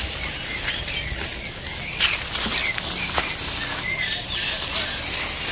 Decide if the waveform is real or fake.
real